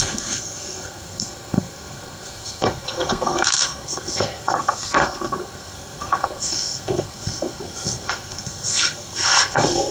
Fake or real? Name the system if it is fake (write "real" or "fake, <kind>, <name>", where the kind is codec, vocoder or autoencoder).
fake, codec, SNAC